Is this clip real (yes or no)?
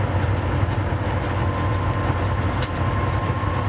yes